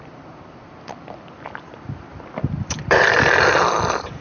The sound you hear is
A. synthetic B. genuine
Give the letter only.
A